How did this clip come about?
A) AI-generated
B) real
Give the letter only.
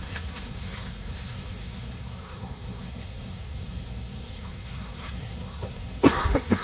A